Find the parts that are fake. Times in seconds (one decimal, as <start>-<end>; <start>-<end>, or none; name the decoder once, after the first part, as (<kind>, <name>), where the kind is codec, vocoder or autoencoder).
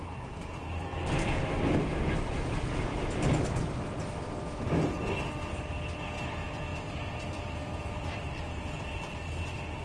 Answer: 2.9-4.0 (vocoder, BigVGAN v2); 6.7-8.6